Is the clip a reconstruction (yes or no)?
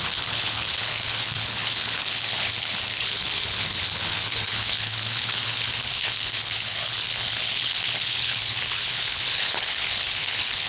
yes